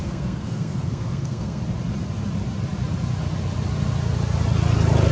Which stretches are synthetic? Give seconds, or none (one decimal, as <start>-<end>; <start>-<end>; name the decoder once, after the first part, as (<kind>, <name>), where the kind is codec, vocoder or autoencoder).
0.0-1.6 (codec, SNAC)